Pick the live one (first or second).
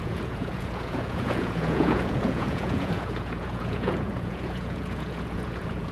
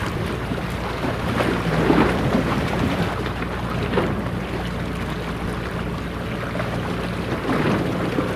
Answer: second